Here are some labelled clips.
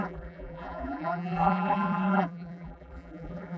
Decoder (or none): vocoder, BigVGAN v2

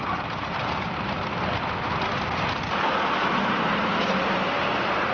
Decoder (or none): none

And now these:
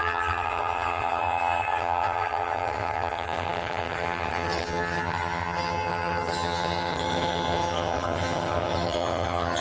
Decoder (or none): vocoder, HiFi-GAN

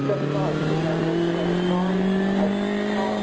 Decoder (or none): none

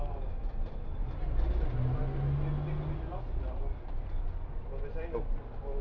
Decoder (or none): none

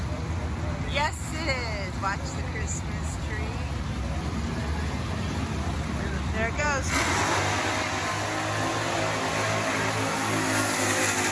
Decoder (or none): none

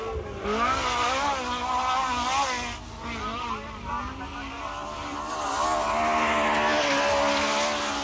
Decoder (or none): none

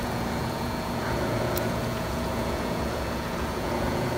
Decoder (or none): vocoder, Vocos